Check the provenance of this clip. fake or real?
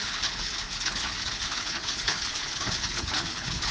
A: fake